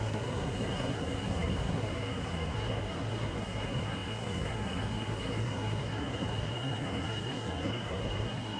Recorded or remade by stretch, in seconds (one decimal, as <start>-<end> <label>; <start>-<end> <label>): 0.0-8.6 remade